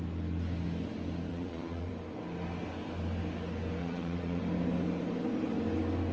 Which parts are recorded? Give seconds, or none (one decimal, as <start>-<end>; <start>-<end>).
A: 0.0-1.3; 1.9-3.8; 4.4-6.1